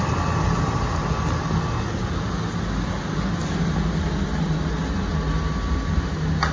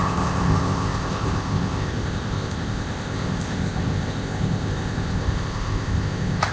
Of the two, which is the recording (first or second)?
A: first